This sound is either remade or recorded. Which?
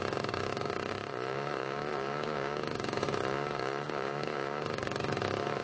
remade